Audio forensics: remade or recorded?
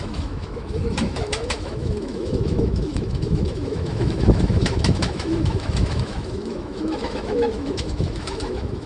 remade